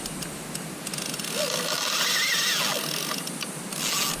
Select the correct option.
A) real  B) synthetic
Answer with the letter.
A